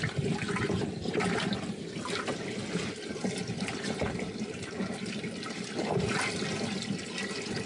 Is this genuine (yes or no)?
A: yes